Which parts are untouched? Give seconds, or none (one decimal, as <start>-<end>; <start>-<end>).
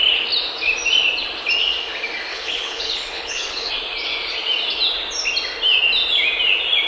0.0-2.3; 3.7-6.9